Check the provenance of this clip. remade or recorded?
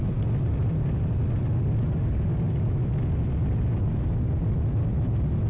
recorded